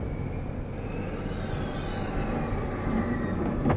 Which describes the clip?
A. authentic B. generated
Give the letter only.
A